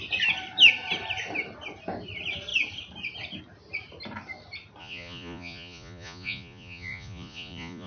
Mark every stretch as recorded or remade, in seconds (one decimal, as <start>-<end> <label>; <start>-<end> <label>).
0.0-4.8 recorded; 4.8-7.9 remade